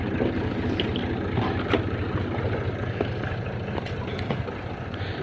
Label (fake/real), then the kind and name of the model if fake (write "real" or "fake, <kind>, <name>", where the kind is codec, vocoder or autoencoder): real